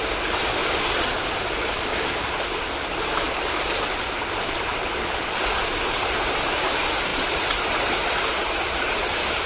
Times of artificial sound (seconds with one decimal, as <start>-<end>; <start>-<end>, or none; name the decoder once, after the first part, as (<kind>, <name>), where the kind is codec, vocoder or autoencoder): none